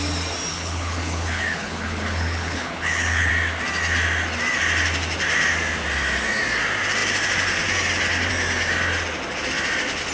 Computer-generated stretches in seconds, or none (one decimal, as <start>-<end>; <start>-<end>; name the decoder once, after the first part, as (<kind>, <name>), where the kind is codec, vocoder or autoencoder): 0.5-3.3 (codec, HILCodec)